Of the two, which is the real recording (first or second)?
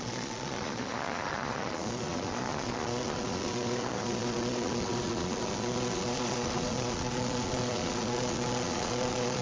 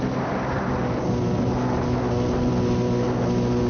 second